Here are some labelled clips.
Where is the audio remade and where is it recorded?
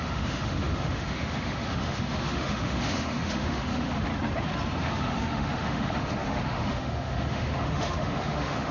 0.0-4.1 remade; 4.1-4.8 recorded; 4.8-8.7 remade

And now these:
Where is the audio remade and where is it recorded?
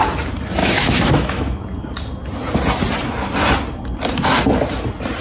0.0-0.6 recorded; 0.6-1.6 remade; 1.6-5.2 recorded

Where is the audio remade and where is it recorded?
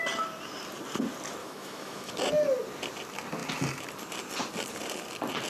0.0-1.4 recorded; 1.4-2.1 remade; 2.1-5.5 recorded